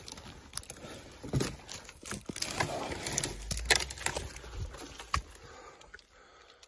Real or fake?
real